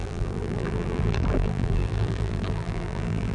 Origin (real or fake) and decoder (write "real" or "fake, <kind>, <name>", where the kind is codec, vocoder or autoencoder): fake, vocoder, BigVGAN v2